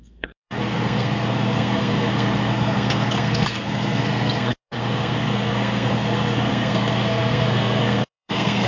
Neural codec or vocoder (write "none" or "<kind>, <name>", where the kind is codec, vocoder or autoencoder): codec, SNAC